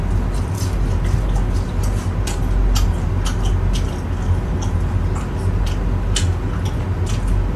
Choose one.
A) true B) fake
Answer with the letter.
A